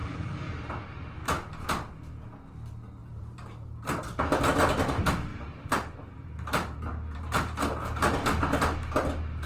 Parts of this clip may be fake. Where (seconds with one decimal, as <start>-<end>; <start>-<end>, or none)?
0.0-0.6; 3.0-4.0; 5.3-8.0